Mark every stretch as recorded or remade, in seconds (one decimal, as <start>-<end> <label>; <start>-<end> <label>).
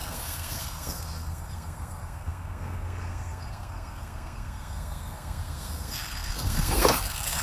0.0-7.4 remade